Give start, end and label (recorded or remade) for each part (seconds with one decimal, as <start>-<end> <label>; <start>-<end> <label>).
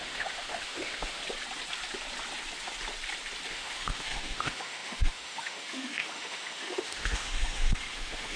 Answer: 0.0-1.2 remade; 1.2-3.5 recorded; 3.5-8.4 remade